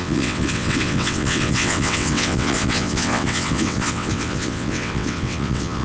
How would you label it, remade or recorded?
remade